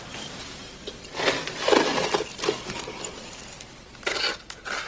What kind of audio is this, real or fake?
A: real